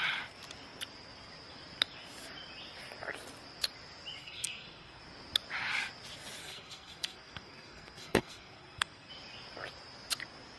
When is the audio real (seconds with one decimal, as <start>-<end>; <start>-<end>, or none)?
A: 0.0-4.2; 5.0-6.4; 9.1-10.6